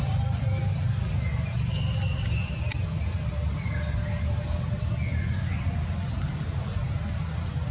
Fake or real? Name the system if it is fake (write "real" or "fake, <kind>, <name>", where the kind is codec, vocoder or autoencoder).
real